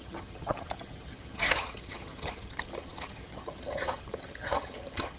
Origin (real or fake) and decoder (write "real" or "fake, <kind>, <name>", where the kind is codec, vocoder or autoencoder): fake, vocoder, HiFi-GAN